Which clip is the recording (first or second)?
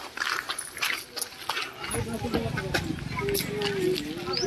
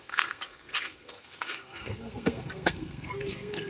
first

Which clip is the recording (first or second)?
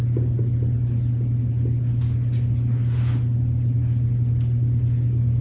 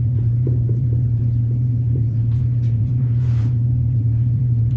first